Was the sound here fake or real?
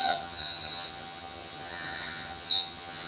fake